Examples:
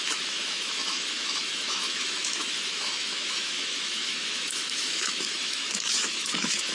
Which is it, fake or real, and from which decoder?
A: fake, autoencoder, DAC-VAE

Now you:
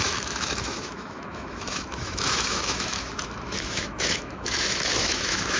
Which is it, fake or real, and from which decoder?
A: fake, autoencoder, DAC-VAE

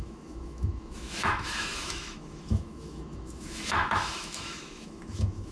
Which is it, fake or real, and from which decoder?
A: fake, autoencoder, DAC-VAE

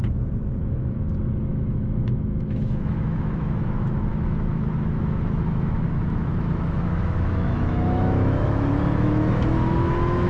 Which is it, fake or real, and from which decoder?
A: fake, autoencoder, DAC-VAE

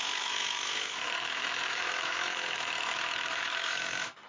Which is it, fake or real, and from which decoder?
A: fake, autoencoder, DAC-VAE